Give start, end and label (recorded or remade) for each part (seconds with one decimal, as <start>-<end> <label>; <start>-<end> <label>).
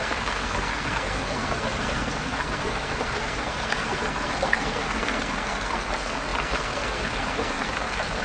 0.0-8.2 remade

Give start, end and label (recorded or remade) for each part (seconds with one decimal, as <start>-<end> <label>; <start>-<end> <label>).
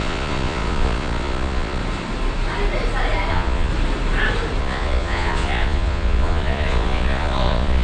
0.0-1.8 remade; 1.8-3.3 recorded; 3.3-3.7 remade; 3.7-4.6 recorded; 4.6-7.8 remade